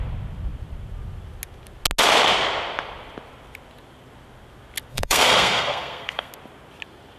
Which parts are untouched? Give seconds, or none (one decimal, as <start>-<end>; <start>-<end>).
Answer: 0.0-4.9; 6.3-7.2